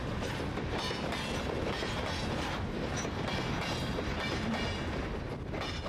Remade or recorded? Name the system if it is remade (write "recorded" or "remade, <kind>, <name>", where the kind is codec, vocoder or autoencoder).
recorded